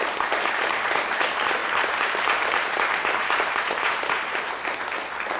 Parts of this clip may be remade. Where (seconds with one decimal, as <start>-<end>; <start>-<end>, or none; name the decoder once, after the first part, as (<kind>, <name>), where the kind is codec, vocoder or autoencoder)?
1.6-4.8 (vocoder, BigVGAN v2)